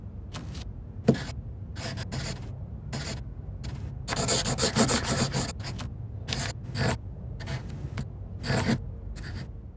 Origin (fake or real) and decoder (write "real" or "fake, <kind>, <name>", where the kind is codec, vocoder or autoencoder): real